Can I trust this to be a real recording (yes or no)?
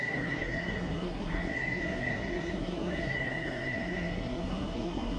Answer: no